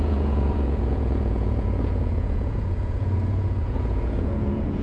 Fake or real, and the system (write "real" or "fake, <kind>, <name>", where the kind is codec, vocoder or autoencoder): fake, vocoder, Vocos